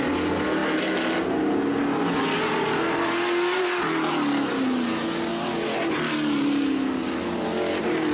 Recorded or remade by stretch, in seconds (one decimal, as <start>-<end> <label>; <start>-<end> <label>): 0.0-8.1 recorded